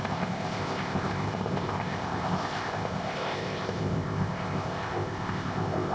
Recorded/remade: remade